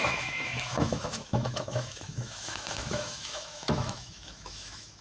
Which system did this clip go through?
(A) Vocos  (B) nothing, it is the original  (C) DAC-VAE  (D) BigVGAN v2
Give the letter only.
C